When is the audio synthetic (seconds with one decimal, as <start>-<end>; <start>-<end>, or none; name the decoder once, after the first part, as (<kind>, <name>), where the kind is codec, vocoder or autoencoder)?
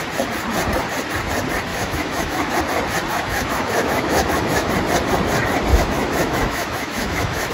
1.7-2.6 (autoencoder, DAC-VAE); 3.1-4.7; 5.7-7.5